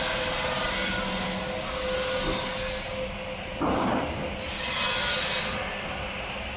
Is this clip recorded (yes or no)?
yes